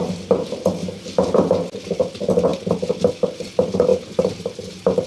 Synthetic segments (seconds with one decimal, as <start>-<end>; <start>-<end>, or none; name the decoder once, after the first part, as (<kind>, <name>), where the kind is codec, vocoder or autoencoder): 0.8-1.4 (vocoder, BigVGAN v2); 3.9-5.1